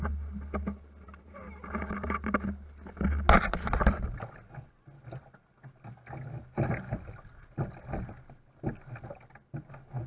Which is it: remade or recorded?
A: recorded